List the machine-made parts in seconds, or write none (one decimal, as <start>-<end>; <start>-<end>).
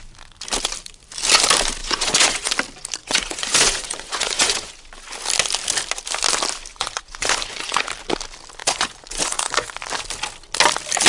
1.8-2.5; 3.0-4.7; 6.7-7.9; 8.6-9.7